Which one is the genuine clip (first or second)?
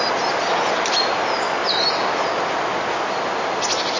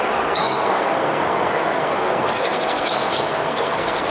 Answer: first